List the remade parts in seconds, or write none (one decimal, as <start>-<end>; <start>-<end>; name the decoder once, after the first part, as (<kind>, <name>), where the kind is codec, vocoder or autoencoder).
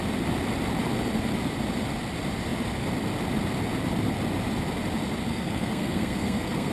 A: 5.3-6.7 (codec, SNAC)